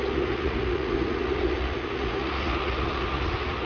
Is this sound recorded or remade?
remade